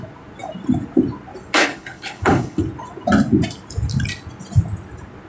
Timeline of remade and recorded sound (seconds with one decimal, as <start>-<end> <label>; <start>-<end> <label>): 0.0-1.6 recorded; 1.6-2.6 remade; 2.6-5.3 recorded